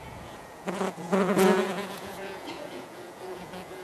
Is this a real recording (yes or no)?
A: no